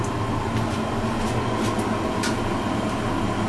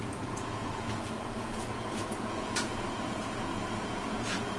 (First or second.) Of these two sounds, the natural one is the first